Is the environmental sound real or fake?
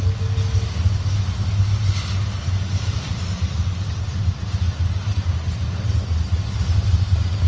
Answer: real